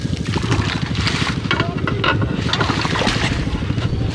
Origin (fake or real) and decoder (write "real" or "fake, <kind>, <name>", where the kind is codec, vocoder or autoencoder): real